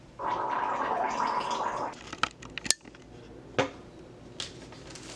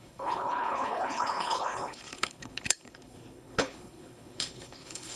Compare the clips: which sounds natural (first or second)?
first